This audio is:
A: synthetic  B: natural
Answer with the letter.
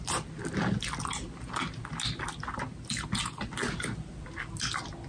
B